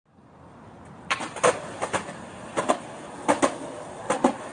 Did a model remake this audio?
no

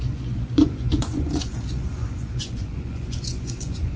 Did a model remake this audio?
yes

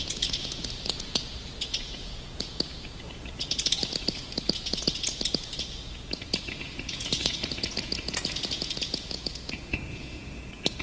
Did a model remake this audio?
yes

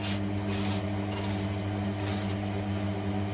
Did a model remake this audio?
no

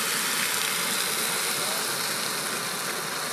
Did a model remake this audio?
no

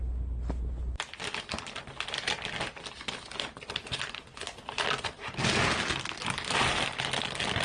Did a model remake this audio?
no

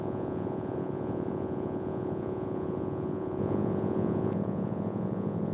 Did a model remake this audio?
yes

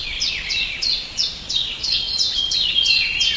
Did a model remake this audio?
yes